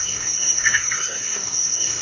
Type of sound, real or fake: fake